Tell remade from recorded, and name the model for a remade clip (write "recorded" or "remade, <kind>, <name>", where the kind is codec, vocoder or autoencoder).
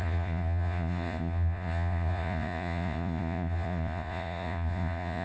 remade, vocoder, Vocos